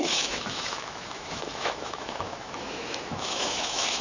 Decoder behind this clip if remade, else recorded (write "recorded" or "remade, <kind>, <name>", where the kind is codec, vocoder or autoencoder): remade, autoencoder, DAC-VAE